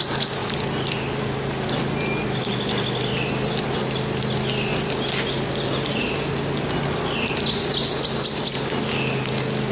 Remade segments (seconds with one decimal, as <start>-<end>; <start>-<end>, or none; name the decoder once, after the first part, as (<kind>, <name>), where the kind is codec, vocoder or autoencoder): none